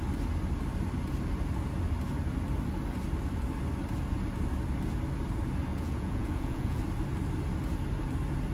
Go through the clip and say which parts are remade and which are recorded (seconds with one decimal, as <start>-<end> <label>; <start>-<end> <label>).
0.0-5.7 recorded; 5.7-6.8 remade; 6.8-8.5 recorded